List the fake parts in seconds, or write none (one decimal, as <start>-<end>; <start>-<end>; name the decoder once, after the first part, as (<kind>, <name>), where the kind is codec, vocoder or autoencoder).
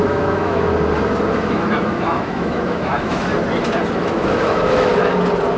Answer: 0.0-0.7 (autoencoder, DAC-VAE); 1.3-3.3; 4.0-4.9